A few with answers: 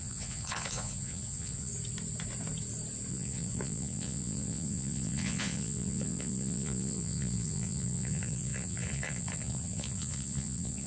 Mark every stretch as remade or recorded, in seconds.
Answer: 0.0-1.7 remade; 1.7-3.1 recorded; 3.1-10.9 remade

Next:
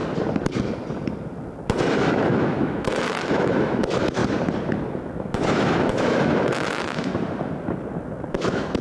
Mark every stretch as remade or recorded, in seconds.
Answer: 0.0-2.0 recorded; 2.0-4.2 remade; 4.2-5.2 recorded; 5.2-7.1 remade; 7.1-8.3 recorded; 8.3-8.8 remade

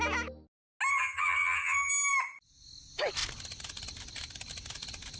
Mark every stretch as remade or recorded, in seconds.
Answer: 0.0-0.9 recorded; 0.9-1.9 remade; 1.9-5.2 recorded